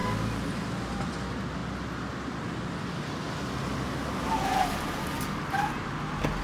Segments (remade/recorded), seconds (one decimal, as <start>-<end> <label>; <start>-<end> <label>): 0.0-6.4 recorded